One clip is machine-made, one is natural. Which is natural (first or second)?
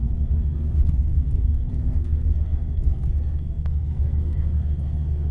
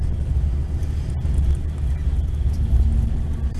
second